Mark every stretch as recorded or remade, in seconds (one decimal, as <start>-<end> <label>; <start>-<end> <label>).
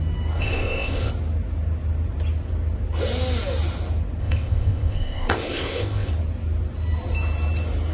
0.0-0.4 recorded; 0.4-1.1 remade; 1.1-4.2 recorded; 4.2-6.1 remade; 6.1-7.9 recorded